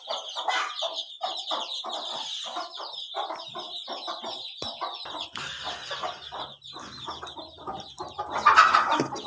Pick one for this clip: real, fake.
real